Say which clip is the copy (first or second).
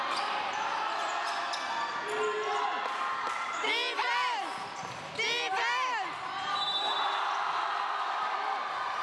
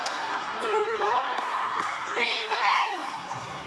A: second